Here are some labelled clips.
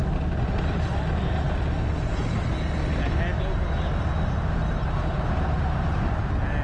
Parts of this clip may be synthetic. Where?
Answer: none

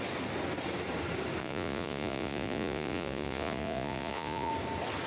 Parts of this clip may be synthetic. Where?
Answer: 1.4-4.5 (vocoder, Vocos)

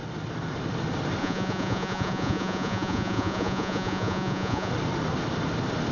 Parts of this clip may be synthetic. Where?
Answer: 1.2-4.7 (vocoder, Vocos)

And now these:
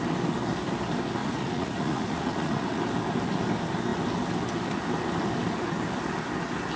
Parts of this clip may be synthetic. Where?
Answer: 1.2-2.8 (vocoder, Vocos)